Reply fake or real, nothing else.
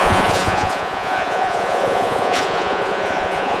fake